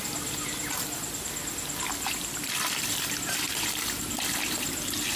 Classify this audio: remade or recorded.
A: remade